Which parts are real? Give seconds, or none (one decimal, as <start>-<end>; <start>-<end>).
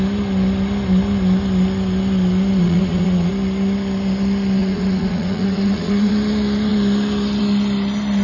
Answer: 0.0-2.6; 3.3-4.6; 6.1-8.2